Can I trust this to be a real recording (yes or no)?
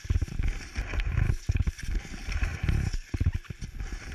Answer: yes